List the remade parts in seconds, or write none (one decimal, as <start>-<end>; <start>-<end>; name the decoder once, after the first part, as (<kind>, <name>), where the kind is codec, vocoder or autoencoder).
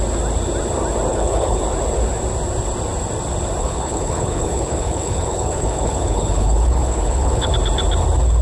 1.1-1.6 (codec, HILCodec); 3.6-7.5